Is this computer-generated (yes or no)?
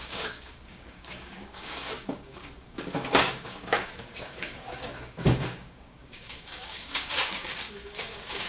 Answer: yes